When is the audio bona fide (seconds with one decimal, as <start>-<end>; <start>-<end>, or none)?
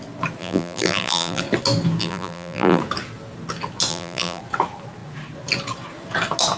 0.0-0.4; 1.4-2.0; 2.8-3.9; 4.4-6.6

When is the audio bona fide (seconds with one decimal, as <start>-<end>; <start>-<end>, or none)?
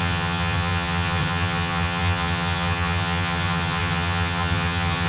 none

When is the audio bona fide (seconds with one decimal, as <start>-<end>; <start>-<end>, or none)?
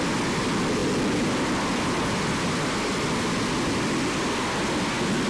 0.0-5.3